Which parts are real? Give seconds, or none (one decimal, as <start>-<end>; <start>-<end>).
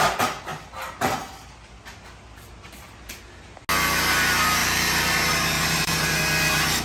0.0-4.6; 6.2-6.8